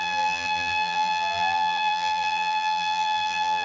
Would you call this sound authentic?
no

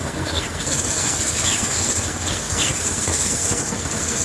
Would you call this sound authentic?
no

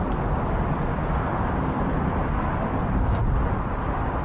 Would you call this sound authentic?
yes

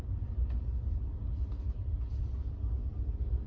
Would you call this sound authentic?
yes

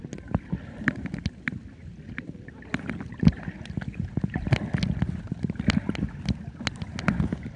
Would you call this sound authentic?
yes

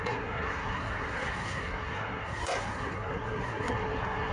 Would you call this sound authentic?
no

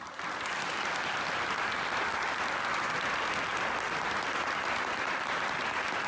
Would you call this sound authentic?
yes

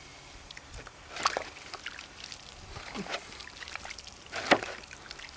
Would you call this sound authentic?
yes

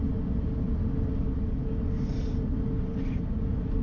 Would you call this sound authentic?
yes